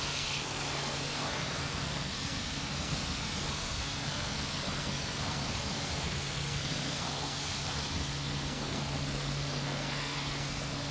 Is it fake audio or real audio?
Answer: fake